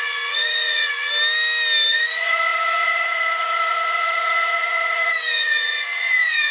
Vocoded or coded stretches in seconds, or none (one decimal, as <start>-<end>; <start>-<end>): 0.0-1.1; 1.9-6.5